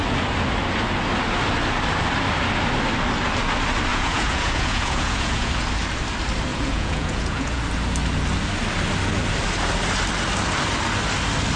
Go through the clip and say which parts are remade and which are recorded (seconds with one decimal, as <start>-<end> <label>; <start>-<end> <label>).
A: 0.0-3.9 recorded; 3.9-5.5 remade; 5.5-6.5 recorded; 6.5-7.6 remade; 7.6-11.6 recorded